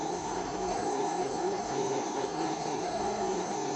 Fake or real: fake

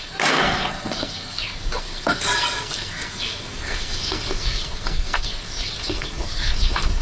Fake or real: fake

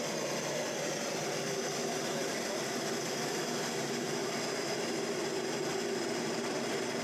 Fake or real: real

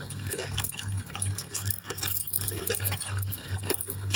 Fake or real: fake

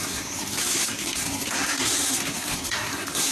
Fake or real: fake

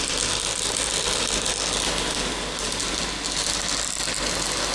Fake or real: real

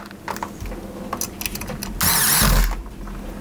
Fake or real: real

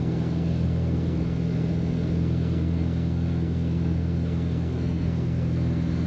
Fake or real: fake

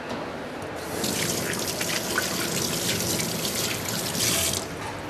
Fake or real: real